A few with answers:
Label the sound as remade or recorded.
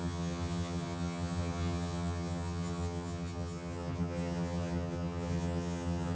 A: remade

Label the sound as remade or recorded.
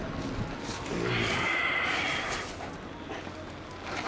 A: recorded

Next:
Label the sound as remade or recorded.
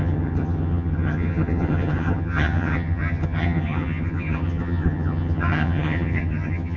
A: remade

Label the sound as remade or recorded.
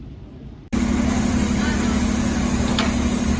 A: recorded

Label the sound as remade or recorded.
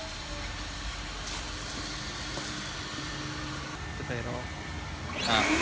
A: recorded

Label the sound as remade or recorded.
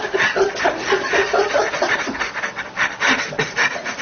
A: recorded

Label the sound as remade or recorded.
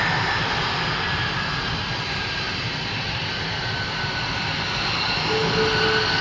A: recorded